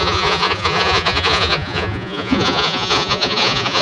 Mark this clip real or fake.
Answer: fake